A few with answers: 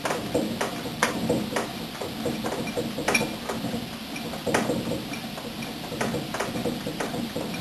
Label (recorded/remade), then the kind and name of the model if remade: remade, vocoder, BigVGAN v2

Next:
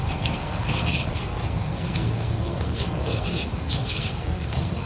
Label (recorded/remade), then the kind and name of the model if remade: remade, codec, SNAC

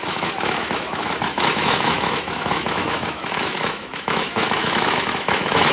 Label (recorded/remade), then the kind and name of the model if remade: remade, autoencoder, DAC-VAE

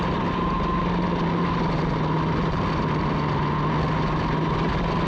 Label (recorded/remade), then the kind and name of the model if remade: recorded